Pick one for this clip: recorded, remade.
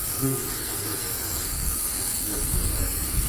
remade